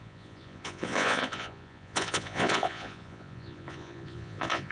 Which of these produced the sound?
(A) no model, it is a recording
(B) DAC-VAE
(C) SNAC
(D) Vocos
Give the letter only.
D